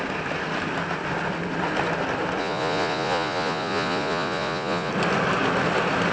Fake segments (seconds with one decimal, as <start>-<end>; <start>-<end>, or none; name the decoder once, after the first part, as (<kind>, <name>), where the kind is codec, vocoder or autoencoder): 2.4-4.9 (vocoder, Vocos)